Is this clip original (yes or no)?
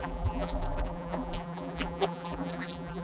no